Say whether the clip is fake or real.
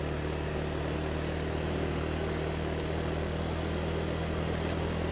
real